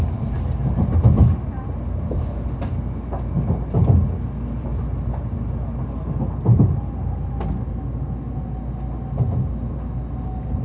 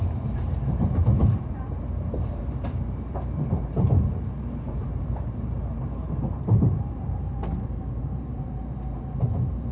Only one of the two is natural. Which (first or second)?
first